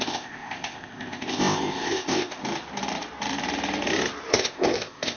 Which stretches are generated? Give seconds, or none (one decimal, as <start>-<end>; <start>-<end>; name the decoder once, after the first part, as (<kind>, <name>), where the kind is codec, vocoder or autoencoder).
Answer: 0.0-2.4 (codec, ZipCodec); 4.3-5.2